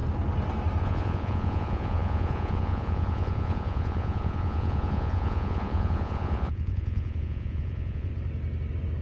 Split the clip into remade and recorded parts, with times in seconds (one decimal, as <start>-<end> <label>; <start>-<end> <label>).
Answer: 0.0-0.8 recorded; 0.8-8.1 remade; 8.1-9.0 recorded